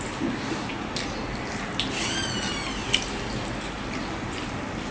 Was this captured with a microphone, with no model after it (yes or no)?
yes